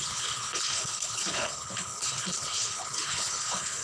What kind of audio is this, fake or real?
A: fake